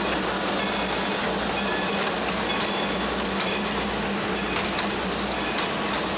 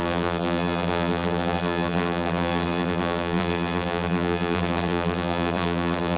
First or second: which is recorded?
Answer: first